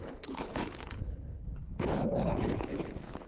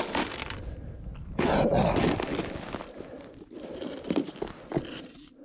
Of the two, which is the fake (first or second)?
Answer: first